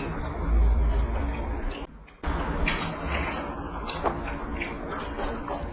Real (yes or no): yes